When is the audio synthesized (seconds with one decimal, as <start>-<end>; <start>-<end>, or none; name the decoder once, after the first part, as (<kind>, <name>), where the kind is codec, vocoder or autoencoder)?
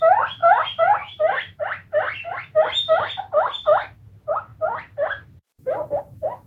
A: 4.5-6.0 (vocoder, BigVGAN v2)